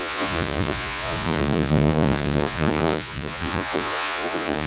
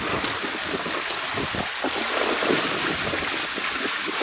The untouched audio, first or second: second